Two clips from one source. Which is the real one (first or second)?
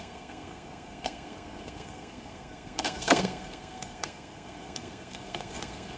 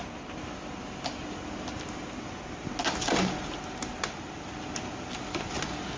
second